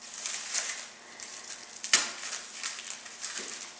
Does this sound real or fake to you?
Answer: real